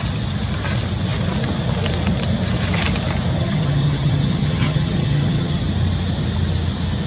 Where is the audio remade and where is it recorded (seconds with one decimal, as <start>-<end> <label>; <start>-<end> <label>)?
0.0-3.4 recorded; 3.4-5.6 remade; 5.6-7.1 recorded